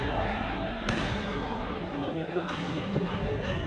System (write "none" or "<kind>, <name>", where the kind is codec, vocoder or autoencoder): codec, SNAC